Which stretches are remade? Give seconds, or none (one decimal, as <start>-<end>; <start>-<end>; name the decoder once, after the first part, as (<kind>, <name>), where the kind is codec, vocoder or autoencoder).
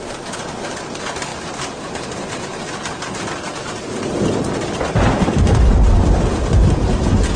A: none